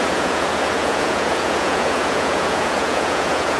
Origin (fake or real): fake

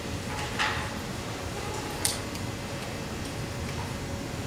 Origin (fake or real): fake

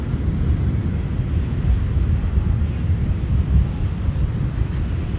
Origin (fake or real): real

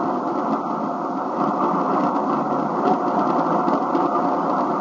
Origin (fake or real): real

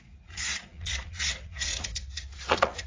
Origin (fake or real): fake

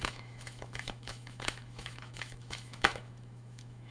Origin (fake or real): fake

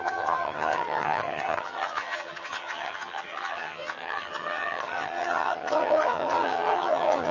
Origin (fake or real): fake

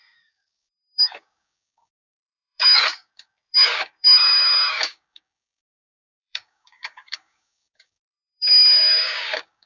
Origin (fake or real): fake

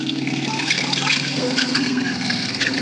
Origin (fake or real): fake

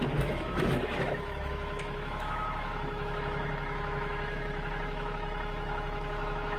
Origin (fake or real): fake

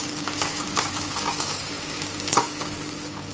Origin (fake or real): fake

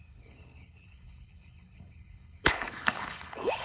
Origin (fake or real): fake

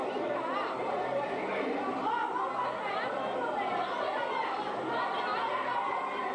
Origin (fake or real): real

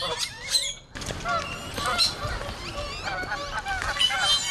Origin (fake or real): real